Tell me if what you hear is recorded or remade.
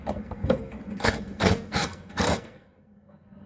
remade